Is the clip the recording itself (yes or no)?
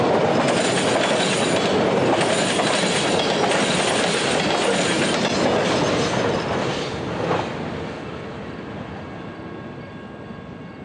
yes